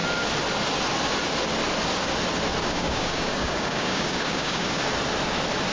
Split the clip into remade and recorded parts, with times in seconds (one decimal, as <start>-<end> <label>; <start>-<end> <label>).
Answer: 0.0-2.6 recorded; 2.6-4.8 remade; 4.8-5.7 recorded